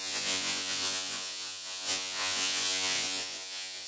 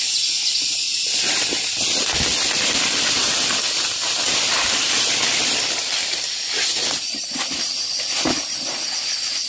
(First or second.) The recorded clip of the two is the second